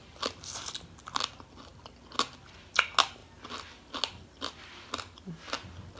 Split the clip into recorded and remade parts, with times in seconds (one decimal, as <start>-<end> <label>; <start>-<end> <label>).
0.0-6.0 recorded